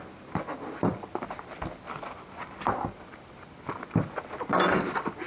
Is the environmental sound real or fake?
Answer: real